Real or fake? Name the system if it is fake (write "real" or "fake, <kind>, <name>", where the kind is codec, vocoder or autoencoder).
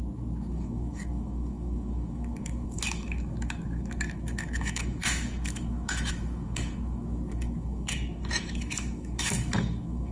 fake, autoencoder, DAC-VAE